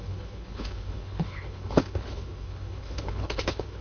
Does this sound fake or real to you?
fake